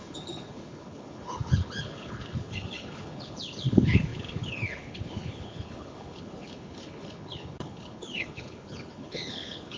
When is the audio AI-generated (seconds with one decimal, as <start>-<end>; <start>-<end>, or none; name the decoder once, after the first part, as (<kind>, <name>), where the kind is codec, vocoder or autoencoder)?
0.0-9.8 (codec, HILCodec)